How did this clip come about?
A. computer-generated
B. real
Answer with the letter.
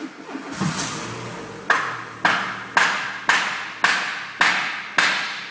B